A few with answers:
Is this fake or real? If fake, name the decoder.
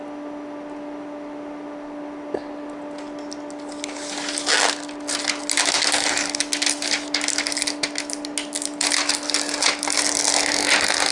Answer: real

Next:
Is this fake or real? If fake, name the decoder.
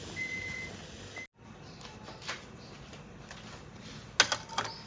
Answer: real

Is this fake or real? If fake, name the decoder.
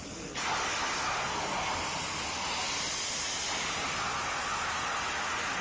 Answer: real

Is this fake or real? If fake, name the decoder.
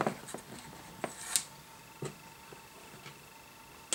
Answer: real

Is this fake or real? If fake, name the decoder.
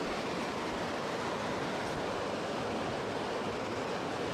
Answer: real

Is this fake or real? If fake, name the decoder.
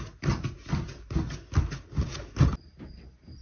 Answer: real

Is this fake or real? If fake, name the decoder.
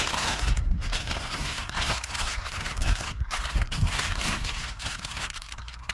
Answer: fake, codec, SNAC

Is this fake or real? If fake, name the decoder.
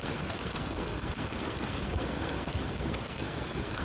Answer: fake, codec, SNAC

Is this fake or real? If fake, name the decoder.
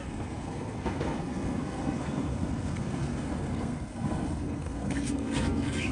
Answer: fake, codec, SNAC